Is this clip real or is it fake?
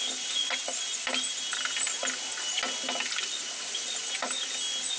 real